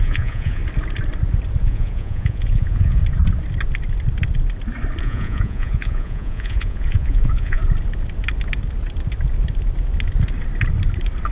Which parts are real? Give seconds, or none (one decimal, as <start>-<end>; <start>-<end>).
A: 0.6-1.6; 3.0-5.0; 7.6-11.3